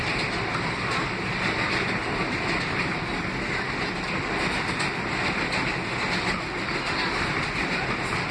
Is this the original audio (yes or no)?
yes